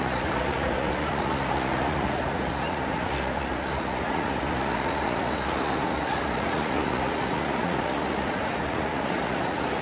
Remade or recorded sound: remade